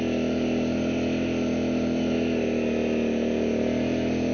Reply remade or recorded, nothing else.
recorded